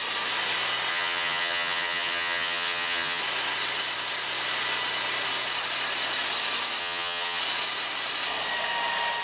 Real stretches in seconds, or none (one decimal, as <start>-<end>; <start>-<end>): 0.0-0.9; 3.2-6.8; 7.4-9.2